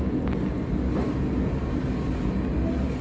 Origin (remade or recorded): recorded